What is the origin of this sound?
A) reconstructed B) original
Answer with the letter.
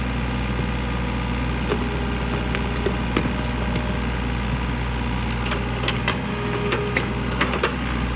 B